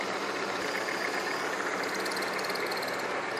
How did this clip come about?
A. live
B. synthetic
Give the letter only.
A